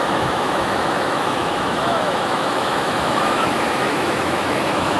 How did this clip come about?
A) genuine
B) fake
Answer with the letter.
B